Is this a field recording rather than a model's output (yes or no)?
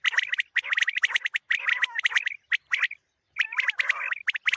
yes